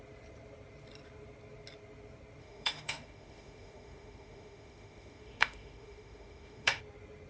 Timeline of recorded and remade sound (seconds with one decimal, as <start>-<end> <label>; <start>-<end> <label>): 0.0-2.4 recorded; 2.4-6.8 remade; 6.8-7.3 recorded